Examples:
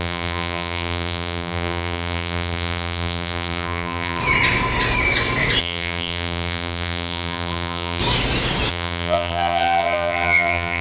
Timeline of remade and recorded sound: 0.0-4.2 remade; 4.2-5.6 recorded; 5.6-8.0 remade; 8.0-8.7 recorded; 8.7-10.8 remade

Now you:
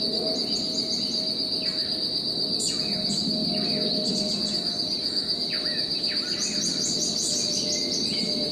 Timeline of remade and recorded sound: 0.0-8.5 recorded

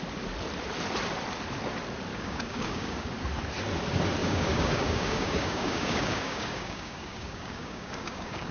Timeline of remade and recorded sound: 0.0-2.1 recorded; 2.1-3.1 remade; 3.1-4.2 recorded; 4.2-8.5 remade

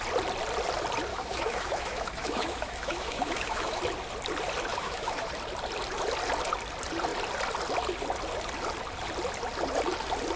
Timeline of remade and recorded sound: 0.0-1.1 recorded; 1.1-3.8 remade; 3.8-4.7 recorded; 4.7-5.3 remade; 5.3-10.4 recorded

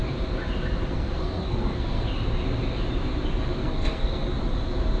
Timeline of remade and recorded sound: 0.0-0.9 recorded; 0.9-2.1 remade; 2.1-3.6 recorded; 3.6-4.4 remade; 4.4-5.0 recorded